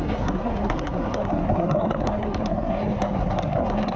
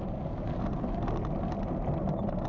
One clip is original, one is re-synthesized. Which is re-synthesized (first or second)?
first